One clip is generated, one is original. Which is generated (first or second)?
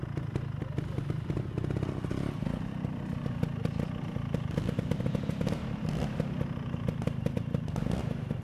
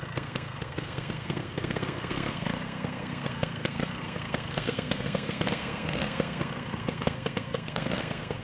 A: second